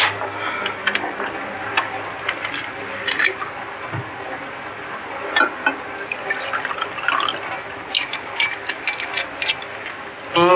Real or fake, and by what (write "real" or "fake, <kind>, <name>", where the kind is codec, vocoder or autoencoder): real